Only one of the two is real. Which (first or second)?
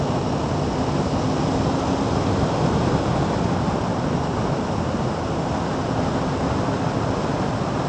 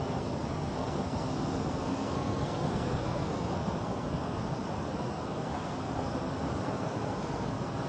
first